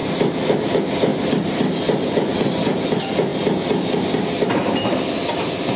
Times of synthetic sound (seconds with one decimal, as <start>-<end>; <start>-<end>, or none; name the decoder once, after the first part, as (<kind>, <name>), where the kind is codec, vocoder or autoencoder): none